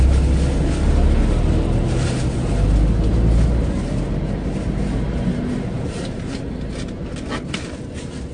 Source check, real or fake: real